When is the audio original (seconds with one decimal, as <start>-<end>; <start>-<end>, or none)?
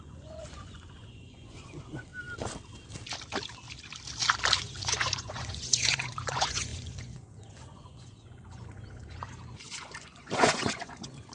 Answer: 2.1-4.6